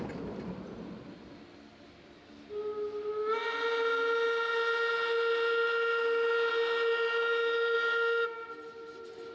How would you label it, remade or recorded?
recorded